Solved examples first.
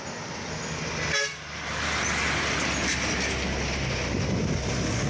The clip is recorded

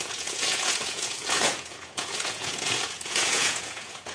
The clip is remade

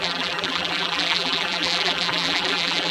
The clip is remade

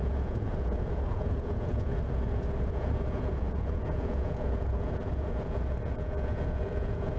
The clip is remade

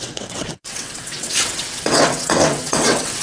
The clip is remade